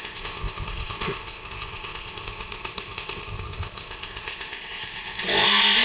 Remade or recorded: remade